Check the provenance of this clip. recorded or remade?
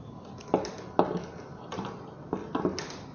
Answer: recorded